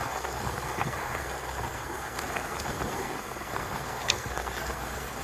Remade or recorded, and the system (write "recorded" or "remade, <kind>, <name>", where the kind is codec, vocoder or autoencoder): remade, codec, SNAC